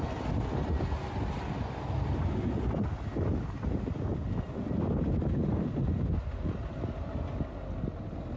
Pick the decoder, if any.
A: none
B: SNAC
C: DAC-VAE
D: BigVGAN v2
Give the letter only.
A